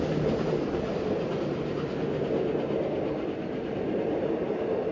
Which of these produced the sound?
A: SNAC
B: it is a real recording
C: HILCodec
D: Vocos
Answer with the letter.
B